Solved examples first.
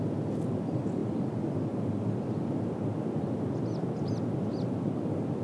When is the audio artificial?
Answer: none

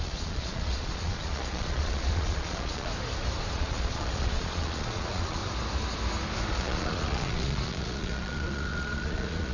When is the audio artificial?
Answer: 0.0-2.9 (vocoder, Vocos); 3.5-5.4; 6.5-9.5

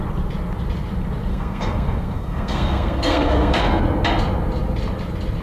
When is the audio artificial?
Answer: 1.3-3.8 (codec, SNAC)

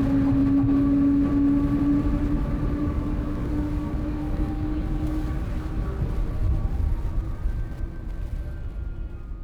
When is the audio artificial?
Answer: 2.8-5.4 (codec, DAC)

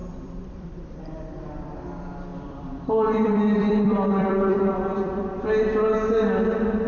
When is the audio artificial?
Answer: 0.0-1.0 (vocoder, BigVGAN v2); 2.3-5.2